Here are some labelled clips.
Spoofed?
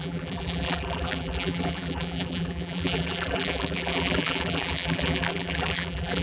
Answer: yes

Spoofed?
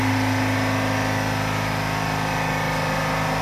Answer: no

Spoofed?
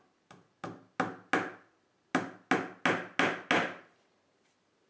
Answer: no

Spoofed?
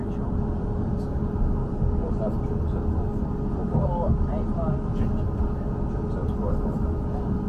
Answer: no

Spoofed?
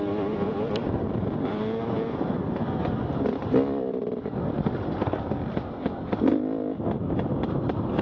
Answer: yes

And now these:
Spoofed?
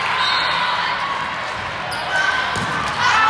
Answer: no